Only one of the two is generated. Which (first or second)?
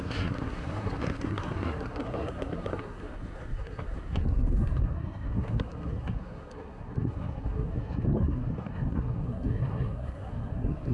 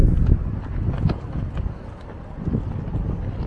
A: first